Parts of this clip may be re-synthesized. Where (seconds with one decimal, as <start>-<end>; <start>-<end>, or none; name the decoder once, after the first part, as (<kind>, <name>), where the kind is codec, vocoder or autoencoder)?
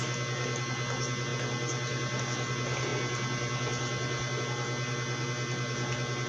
none